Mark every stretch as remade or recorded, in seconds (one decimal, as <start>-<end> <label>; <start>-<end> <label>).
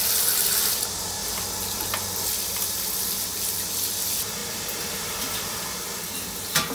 0.0-4.4 recorded; 4.4-6.0 remade; 6.0-6.7 recorded